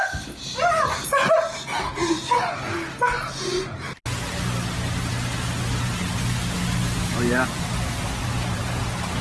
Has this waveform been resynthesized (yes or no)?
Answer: no